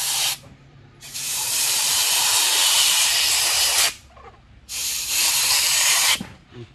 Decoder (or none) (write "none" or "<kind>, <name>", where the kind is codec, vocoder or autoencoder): vocoder, BigVGAN v2